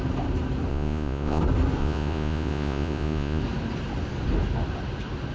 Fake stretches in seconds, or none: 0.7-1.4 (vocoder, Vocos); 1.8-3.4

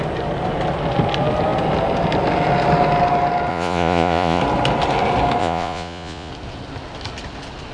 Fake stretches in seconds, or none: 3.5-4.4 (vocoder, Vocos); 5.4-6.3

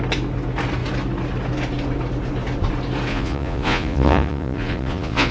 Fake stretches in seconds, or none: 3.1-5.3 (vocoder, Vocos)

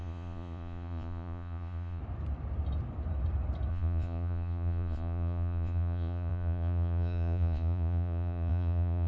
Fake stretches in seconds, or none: 0.0-2.0 (vocoder, Vocos); 3.7-9.1

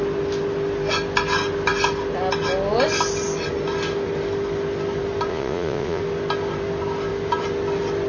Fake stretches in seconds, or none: 5.3-6.0 (vocoder, Vocos)

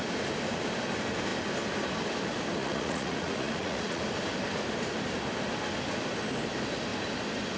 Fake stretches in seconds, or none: 2.6-4.0 (vocoder, Vocos)

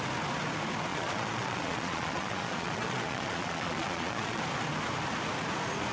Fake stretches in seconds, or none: 0.9-4.4 (vocoder, Vocos)